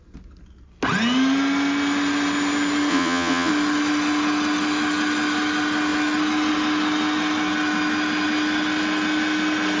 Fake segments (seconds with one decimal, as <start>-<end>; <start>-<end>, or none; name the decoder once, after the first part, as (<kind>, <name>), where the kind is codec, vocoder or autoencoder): 2.9-3.5 (vocoder, Vocos)